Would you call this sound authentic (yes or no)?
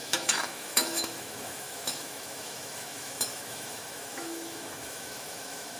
no